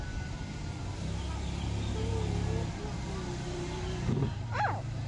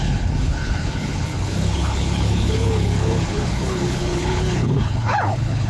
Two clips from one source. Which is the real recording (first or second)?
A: first